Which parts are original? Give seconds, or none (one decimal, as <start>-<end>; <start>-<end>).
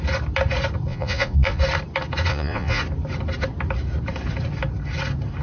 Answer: 0.0-0.9; 1.6-2.3; 2.8-5.4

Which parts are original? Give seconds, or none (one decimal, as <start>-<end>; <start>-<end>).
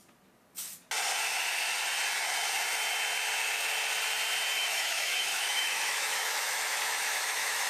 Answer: 0.0-4.6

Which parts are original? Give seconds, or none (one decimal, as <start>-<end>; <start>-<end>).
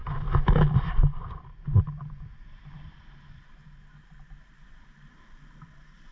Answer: 0.0-6.1